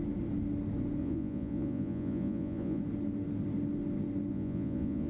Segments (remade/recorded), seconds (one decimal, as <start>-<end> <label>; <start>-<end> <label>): 0.0-1.0 recorded; 1.0-2.8 remade; 2.8-4.3 recorded; 4.3-5.1 remade